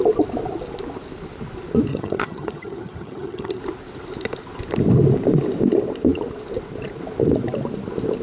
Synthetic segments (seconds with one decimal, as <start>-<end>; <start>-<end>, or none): 1.9-3.6